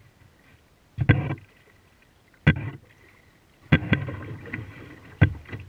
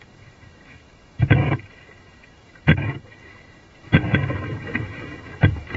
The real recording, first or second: first